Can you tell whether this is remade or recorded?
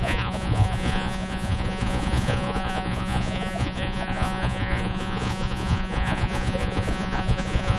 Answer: remade